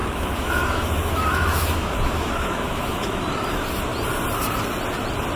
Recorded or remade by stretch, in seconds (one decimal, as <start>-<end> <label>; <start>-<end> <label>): 0.0-3.2 remade; 3.2-5.4 recorded